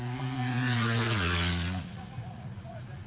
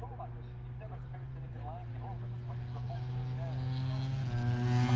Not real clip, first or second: first